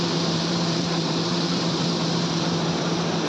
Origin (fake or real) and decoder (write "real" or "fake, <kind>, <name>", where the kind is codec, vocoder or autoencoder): fake, vocoder, BigVGAN v2